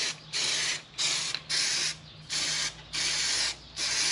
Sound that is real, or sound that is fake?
real